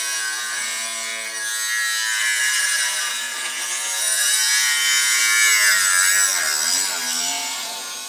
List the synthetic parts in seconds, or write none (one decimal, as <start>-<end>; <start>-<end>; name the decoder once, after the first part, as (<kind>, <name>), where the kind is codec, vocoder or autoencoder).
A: 0.0-1.1 (vocoder, Vocos); 2.4-5.2; 7.3-8.1